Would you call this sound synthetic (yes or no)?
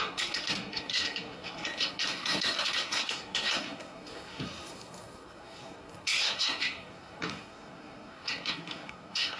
yes